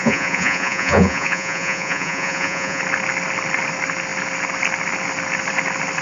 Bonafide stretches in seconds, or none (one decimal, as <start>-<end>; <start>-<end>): 2.8-6.0